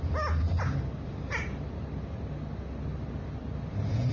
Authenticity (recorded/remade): recorded